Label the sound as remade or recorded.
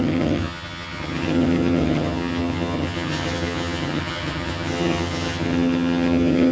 remade